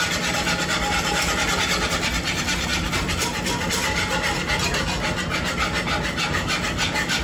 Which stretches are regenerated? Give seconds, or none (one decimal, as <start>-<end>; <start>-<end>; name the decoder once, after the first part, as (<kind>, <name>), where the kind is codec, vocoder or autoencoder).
none